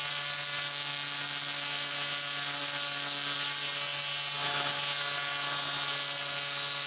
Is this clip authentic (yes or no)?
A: yes